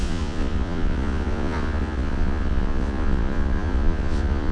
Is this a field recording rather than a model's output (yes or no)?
no